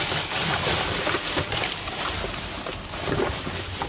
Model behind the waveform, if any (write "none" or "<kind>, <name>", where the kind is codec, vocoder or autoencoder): none